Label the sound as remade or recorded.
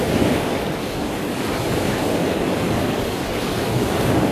remade